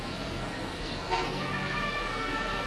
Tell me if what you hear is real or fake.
fake